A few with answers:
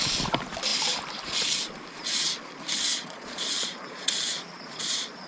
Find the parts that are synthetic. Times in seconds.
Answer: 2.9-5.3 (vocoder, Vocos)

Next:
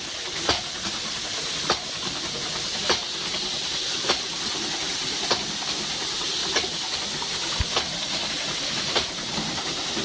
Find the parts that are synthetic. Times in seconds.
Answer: 0.0-6.4 (vocoder, BigVGAN v2); 8.3-10.0

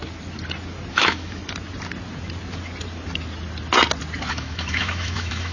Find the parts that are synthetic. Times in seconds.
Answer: 0.9-1.4 (autoencoder, DAC-VAE); 4.3-5.5

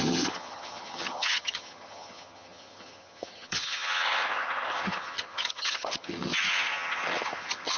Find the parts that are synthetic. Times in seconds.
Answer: 0.0-7.8 (vocoder, HiFi-GAN)

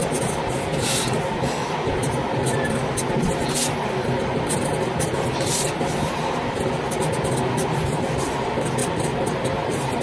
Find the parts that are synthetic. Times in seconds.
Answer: 8.8-10.0 (vocoder, BigVGAN v2)